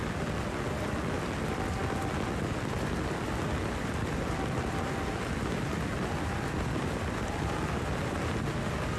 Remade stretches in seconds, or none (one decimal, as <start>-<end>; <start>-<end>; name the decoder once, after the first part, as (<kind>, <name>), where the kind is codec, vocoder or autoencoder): none